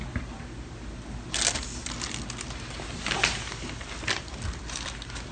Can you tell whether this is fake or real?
real